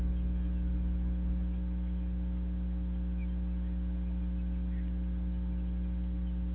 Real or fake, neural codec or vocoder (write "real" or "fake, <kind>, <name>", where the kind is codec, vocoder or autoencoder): real